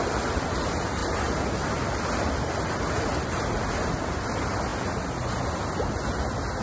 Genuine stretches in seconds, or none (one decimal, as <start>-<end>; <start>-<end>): 0.0-6.6